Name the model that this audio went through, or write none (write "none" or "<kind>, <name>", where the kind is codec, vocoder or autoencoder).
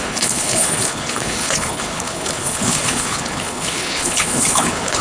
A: codec, HILCodec